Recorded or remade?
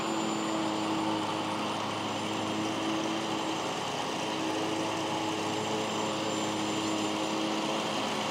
recorded